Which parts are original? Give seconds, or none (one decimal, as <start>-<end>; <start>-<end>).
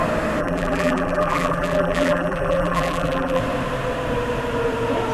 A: 0.0-0.4; 3.4-5.1